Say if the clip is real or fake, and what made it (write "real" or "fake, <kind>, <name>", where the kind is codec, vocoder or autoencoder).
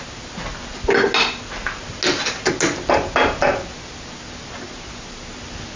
real